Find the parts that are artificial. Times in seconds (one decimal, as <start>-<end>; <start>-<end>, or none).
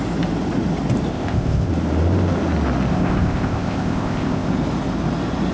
1.1-1.7; 2.9-4.5